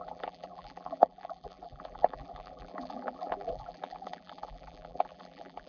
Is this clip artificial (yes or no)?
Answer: yes